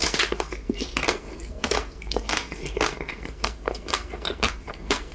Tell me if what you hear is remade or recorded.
remade